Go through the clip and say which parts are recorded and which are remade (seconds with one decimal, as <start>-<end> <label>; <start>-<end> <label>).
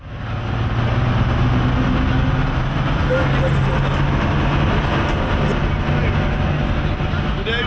0.0-7.7 recorded